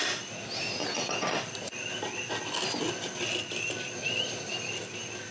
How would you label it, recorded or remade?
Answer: recorded